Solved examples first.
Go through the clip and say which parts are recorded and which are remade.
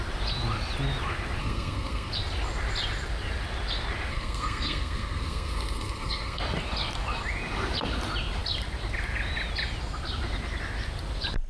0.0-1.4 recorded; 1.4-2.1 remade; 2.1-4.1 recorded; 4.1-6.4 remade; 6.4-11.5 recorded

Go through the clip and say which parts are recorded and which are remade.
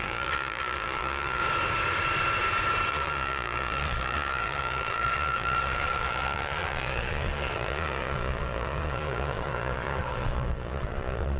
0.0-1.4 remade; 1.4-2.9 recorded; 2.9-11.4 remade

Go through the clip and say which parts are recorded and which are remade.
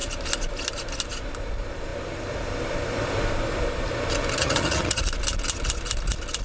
0.0-4.4 recorded; 4.4-5.0 remade; 5.0-6.4 recorded